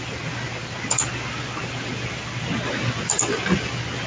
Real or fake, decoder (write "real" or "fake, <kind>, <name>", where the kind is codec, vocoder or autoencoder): real